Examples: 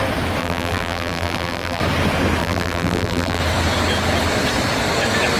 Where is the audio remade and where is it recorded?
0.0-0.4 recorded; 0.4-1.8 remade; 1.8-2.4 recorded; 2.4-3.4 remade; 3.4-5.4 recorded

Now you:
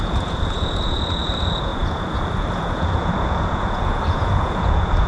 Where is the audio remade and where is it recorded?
0.0-5.1 remade

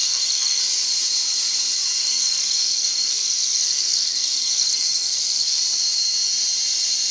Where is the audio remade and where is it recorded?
0.0-0.6 remade; 0.6-2.0 recorded; 2.0-5.6 remade; 5.6-7.1 recorded

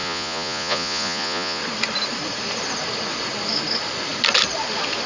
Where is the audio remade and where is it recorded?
0.0-1.6 remade; 1.6-5.1 recorded

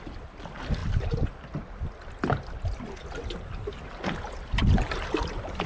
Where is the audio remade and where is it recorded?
0.0-5.7 recorded

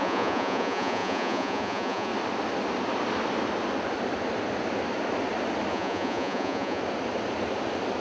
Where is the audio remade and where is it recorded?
0.0-2.1 remade; 2.1-5.7 recorded; 5.7-6.8 remade; 6.8-8.0 recorded

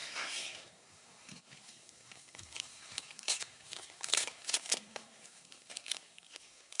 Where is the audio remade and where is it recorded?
0.0-6.8 remade